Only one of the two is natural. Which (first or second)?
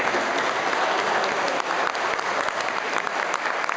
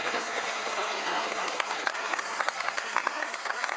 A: first